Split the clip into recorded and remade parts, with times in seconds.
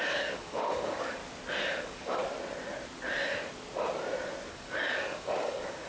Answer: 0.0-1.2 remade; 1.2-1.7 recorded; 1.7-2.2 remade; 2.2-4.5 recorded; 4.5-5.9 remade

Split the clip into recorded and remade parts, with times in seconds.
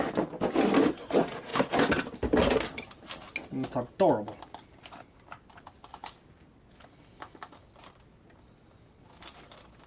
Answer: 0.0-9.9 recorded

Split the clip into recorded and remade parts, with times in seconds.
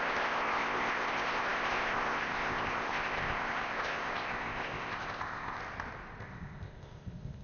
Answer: 0.0-5.6 remade; 5.6-6.2 recorded; 6.2-7.4 remade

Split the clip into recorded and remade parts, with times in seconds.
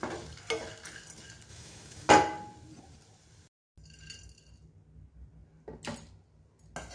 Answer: 0.0-1.5 recorded; 1.5-2.1 remade; 2.1-6.9 recorded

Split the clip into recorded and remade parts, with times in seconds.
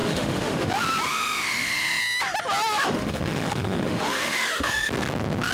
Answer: 0.0-0.7 remade; 0.7-1.1 recorded; 1.1-2.0 remade; 2.0-2.8 recorded; 2.8-4.9 remade; 4.9-5.5 recorded